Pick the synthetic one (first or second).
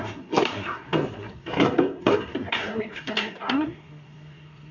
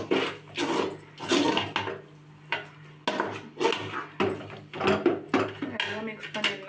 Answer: first